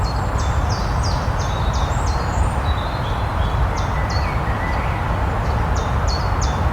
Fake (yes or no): no